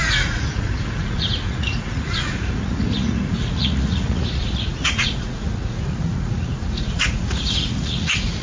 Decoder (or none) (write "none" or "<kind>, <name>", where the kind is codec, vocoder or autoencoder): vocoder, Vocos